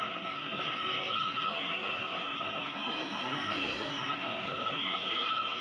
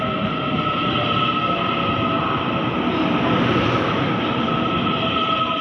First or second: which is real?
second